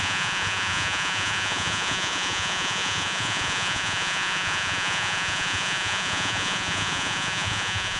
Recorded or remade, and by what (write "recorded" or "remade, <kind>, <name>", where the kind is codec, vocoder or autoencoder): remade, vocoder, Vocos